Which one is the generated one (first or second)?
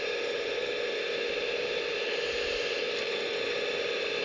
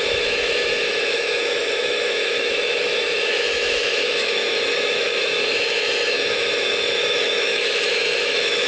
second